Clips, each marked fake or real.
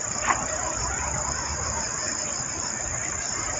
fake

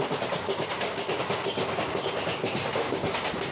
real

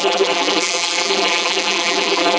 fake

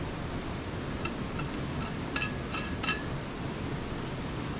real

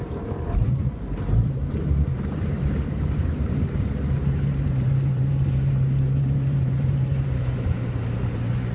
fake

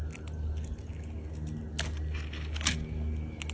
real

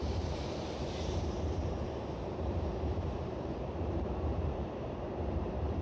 fake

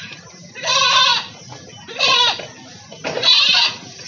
real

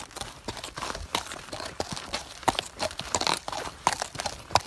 fake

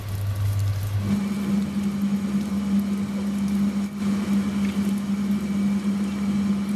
real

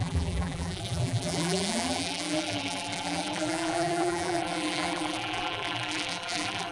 fake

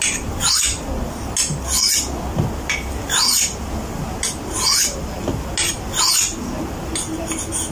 real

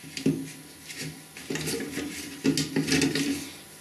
real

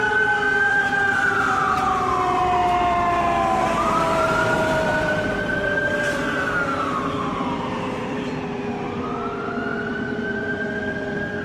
fake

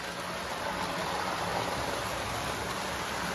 real